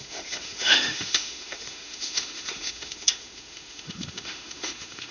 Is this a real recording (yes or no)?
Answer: no